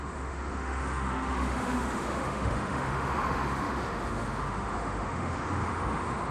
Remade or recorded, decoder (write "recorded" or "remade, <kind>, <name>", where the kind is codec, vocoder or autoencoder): remade, autoencoder, DAC-VAE